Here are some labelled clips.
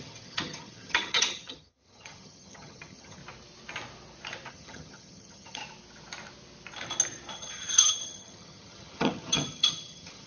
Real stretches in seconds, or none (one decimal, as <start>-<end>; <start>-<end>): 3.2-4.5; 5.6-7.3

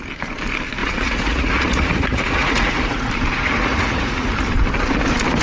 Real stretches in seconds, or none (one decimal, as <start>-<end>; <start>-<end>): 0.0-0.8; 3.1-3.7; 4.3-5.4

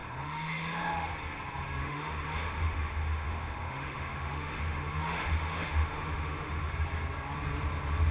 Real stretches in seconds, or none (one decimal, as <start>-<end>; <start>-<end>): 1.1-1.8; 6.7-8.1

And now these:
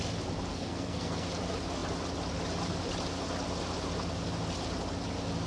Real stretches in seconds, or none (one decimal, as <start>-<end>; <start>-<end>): 0.0-0.5; 1.3-5.5

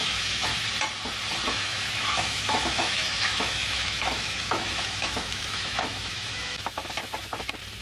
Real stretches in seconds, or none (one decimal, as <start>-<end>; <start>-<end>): 0.5-1.5; 6.8-7.8

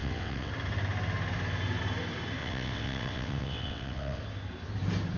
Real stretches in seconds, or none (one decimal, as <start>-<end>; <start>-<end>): 0.5-2.4; 4.2-5.2